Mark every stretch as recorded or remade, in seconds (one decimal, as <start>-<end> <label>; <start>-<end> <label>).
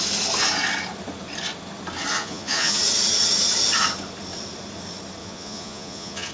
0.0-2.1 recorded; 2.1-2.8 remade; 2.8-5.2 recorded; 5.2-6.3 remade